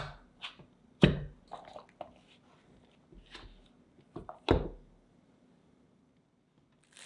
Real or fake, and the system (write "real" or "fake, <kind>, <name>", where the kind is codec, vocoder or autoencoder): real